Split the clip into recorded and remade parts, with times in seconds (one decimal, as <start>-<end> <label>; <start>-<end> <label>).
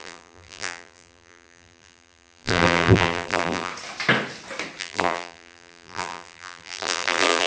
0.0-3.7 remade; 3.7-4.8 recorded; 4.8-7.5 remade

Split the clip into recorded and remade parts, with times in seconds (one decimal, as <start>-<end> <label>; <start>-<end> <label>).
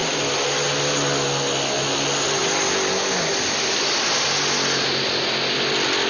0.0-6.1 recorded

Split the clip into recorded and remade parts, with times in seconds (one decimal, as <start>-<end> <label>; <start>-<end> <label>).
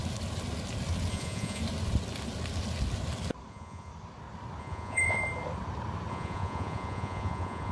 0.0-1.1 recorded; 1.1-1.6 remade; 1.6-3.5 recorded; 3.5-3.9 remade; 3.9-4.6 recorded; 4.6-5.2 remade; 5.2-6.1 recorded; 6.1-7.7 remade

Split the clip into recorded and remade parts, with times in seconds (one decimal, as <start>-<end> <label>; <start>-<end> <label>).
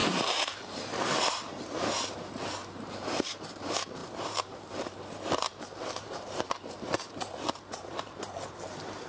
0.0-9.1 remade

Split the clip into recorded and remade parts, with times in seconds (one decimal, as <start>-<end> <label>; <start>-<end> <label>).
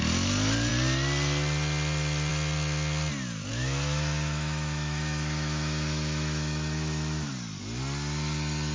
0.0-3.5 recorded; 3.5-7.3 remade; 7.3-8.7 recorded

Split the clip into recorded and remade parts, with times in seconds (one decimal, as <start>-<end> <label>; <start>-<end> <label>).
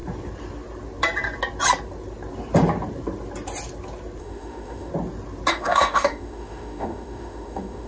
0.0-4.2 recorded; 4.2-4.9 remade; 4.9-5.5 recorded; 5.5-7.9 remade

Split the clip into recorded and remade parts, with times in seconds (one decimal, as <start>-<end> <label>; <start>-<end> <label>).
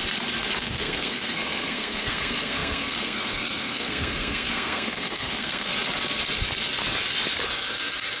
0.0-0.6 recorded; 0.6-5.7 remade; 5.7-8.2 recorded